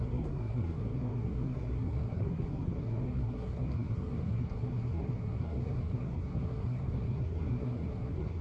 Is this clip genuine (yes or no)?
no